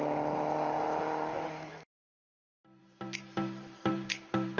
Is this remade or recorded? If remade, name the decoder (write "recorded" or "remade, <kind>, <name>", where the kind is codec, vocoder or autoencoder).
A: remade, vocoder, BigVGAN v2